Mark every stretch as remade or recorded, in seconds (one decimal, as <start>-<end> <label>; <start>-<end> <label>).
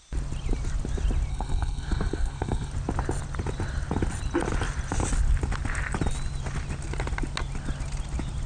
0.0-1.3 recorded; 1.3-2.7 remade; 2.7-8.5 recorded